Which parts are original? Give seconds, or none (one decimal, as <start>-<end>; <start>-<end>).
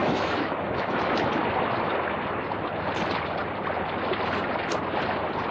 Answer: 1.3-5.5